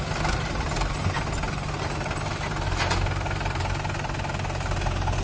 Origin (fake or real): real